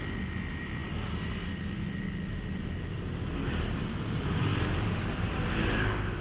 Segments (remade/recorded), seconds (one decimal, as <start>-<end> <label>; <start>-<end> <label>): 0.0-6.2 recorded